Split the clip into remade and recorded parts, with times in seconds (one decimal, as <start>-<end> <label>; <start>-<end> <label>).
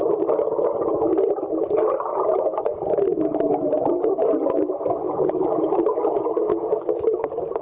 0.0-7.6 recorded